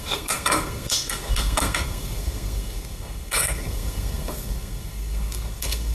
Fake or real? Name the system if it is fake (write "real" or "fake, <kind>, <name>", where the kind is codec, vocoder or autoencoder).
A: fake, codec, SNAC